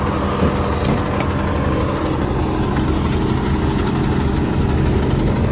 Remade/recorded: recorded